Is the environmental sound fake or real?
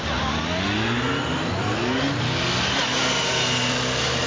real